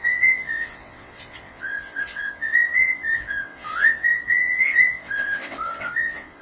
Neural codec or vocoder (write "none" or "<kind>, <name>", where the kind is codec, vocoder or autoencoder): vocoder, WaveNeXt